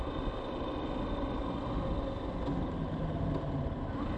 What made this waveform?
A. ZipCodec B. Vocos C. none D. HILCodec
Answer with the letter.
C